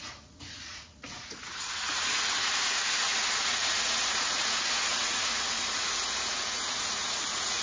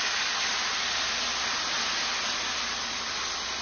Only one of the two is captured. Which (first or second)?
second